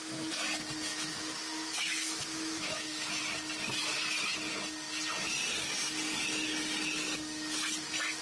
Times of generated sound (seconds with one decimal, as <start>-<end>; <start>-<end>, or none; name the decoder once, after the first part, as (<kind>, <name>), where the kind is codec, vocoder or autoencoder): 0.9-3.2 (autoencoder, DAC-VAE)